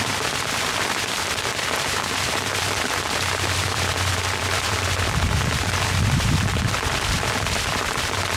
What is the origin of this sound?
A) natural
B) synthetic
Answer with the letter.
B